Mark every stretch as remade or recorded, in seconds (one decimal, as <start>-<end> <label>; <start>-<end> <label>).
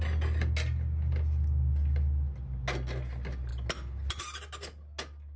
0.0-5.4 recorded